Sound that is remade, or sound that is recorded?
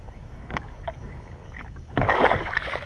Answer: remade